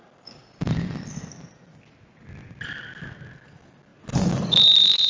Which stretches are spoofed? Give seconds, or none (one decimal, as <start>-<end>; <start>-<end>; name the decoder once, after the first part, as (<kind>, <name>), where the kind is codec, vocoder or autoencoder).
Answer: none